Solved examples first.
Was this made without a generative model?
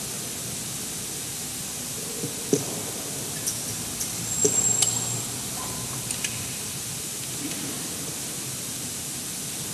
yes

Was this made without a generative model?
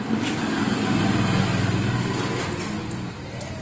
yes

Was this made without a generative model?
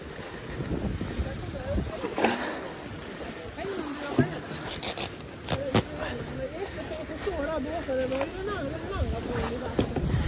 yes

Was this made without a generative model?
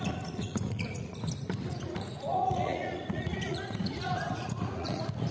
no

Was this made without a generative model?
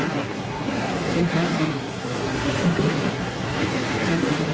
no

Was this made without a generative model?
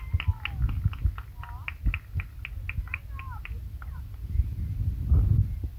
yes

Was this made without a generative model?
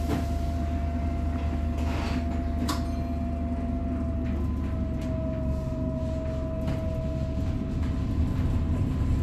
yes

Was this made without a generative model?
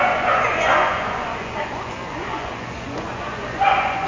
no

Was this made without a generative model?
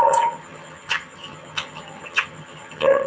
no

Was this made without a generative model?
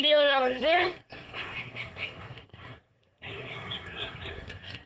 no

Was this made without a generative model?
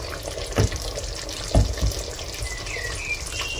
yes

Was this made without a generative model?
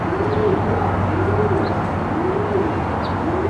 yes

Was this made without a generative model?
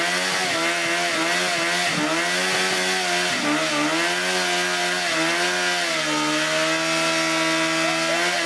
yes